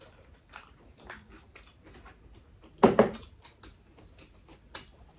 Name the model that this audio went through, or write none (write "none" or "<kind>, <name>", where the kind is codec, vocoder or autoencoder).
none